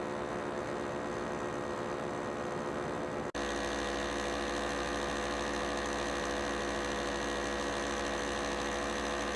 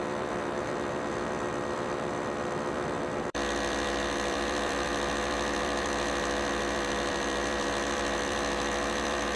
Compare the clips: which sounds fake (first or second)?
second